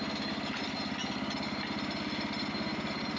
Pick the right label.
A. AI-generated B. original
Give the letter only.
B